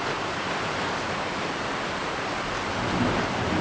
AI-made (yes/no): no